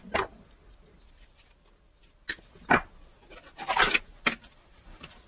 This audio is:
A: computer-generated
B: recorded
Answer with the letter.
B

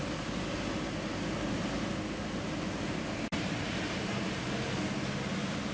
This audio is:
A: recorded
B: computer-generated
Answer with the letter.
A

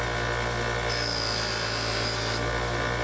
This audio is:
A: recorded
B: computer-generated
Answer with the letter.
A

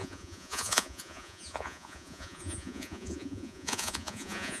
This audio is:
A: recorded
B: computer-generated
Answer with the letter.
B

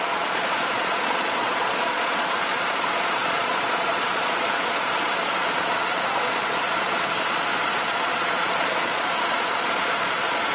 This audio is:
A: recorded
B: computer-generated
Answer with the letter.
B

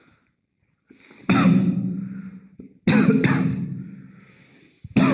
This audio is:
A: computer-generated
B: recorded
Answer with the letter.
B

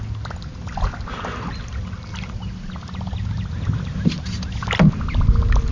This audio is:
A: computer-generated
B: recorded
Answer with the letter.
B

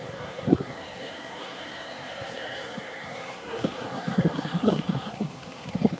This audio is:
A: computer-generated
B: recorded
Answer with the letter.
A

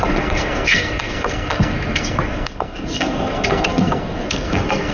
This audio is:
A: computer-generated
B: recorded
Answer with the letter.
A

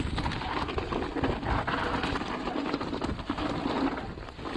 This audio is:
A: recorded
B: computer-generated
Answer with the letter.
A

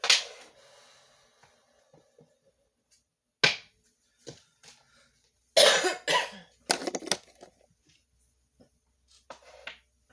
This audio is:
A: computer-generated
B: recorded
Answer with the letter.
B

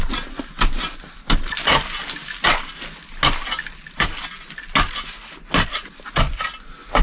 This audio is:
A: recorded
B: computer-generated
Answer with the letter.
A